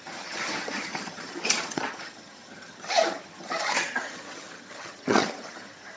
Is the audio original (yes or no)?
no